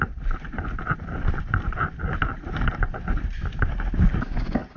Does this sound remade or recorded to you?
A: recorded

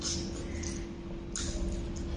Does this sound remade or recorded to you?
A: recorded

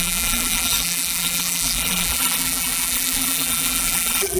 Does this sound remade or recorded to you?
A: remade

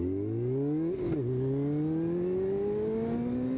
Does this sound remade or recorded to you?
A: recorded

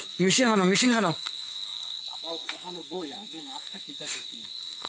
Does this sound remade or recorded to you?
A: remade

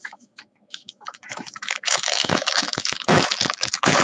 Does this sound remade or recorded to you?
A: remade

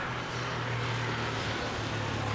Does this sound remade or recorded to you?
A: recorded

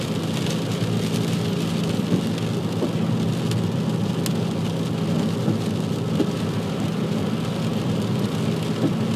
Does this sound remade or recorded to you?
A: recorded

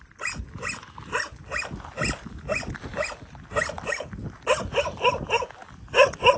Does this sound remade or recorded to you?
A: recorded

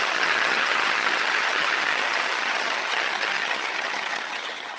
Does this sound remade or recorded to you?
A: remade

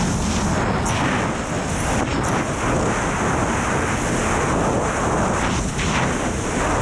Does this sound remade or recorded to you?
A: recorded